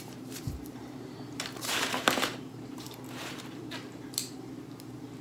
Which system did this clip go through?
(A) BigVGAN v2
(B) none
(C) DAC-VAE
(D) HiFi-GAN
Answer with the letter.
A